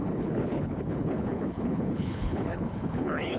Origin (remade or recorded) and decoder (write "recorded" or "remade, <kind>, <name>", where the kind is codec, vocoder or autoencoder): remade, codec, HILCodec